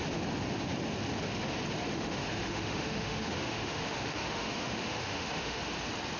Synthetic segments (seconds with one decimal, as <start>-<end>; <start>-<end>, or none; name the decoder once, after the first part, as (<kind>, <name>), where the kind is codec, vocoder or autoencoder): 1.9-5.6 (autoencoder, DAC-VAE)